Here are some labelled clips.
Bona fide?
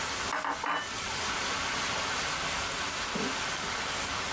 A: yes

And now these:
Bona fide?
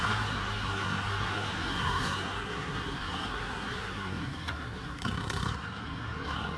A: no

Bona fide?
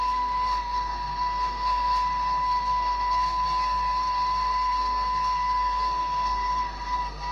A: no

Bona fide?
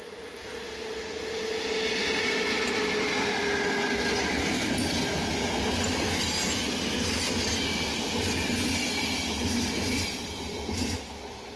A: yes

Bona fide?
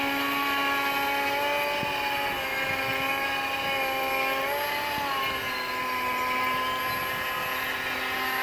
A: yes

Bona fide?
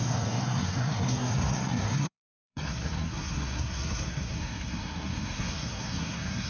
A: no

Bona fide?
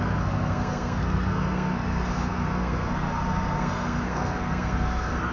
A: no